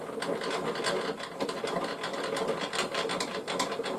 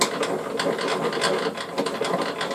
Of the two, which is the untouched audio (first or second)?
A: second